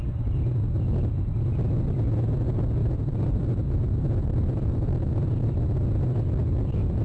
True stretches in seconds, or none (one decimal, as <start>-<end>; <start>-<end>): 0.0-2.8; 5.5-7.0